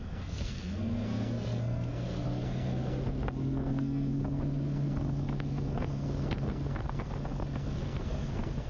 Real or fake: fake